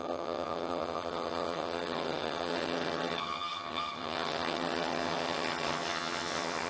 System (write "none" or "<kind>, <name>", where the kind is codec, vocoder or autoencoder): vocoder, HiFi-GAN